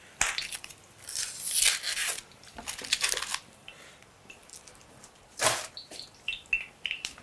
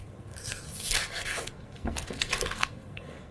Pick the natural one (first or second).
first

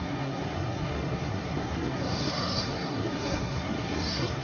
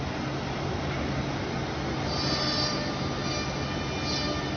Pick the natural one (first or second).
second